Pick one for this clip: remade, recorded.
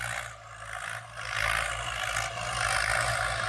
recorded